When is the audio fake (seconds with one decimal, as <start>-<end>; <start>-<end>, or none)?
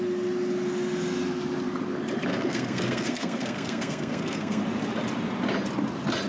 2.3-4.6